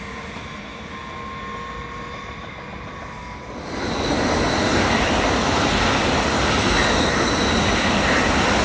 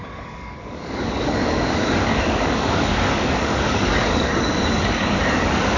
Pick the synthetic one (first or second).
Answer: second